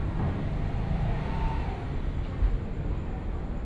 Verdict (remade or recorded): recorded